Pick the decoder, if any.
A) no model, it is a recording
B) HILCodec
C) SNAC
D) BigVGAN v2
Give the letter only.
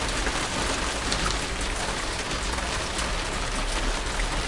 A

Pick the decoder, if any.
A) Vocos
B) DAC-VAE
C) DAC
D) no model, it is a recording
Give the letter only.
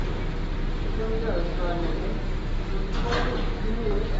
D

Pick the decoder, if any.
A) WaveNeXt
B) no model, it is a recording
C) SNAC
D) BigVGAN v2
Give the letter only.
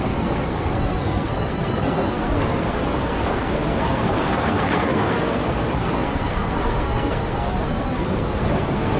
C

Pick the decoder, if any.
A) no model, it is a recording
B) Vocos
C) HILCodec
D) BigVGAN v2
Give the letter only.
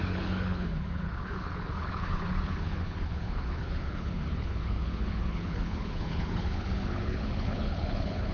C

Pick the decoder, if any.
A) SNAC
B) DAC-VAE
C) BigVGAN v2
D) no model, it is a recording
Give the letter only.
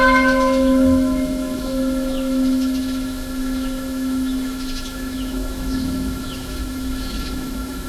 B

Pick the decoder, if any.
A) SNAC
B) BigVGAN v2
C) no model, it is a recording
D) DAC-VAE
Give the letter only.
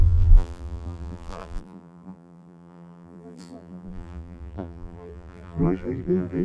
B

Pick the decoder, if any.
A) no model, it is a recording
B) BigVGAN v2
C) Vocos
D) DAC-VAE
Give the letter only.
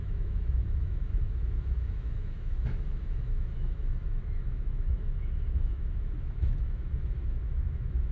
D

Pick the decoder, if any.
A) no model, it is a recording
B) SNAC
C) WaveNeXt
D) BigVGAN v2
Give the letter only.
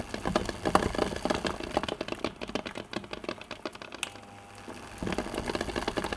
A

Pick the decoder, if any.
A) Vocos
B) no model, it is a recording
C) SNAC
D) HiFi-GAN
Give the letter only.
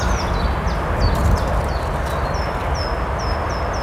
B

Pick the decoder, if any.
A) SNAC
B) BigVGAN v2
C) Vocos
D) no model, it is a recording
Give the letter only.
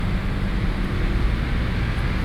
D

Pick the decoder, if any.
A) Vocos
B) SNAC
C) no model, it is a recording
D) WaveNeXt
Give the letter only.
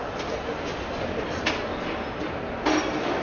C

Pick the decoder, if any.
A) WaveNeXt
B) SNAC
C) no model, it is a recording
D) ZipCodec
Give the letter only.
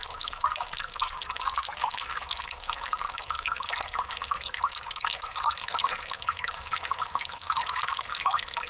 B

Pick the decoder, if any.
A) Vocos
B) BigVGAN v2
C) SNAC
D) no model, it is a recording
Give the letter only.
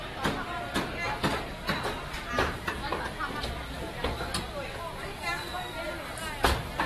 D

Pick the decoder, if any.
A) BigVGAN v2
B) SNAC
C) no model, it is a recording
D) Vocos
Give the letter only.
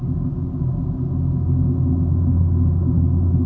C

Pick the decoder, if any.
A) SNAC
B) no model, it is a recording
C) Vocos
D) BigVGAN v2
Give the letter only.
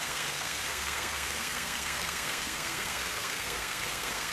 A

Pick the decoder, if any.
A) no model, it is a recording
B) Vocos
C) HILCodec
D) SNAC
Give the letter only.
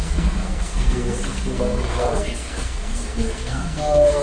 D